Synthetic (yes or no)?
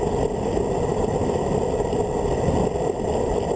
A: no